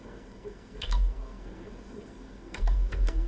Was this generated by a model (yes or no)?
yes